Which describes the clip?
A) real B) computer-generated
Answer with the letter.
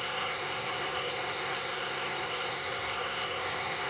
B